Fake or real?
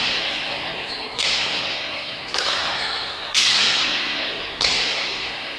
fake